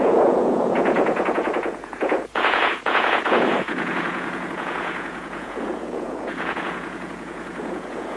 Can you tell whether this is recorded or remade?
remade